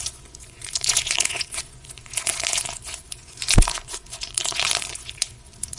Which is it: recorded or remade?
remade